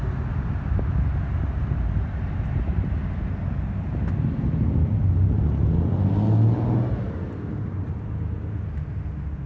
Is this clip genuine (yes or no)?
yes